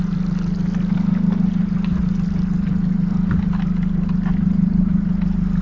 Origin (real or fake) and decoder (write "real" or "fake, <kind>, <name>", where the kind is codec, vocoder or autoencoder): real